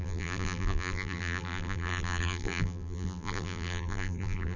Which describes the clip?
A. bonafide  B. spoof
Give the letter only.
B